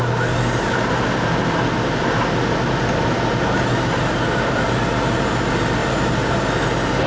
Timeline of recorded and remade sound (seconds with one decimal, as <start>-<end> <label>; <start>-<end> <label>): 0.0-7.1 recorded